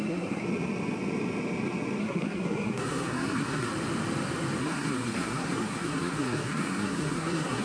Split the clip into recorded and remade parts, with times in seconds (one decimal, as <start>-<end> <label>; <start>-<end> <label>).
0.0-0.4 remade; 0.4-2.0 recorded; 2.0-3.7 remade; 3.7-4.6 recorded; 4.6-7.6 remade